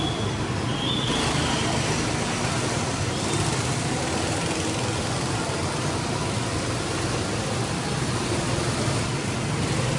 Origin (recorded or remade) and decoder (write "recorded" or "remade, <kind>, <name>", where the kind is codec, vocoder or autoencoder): recorded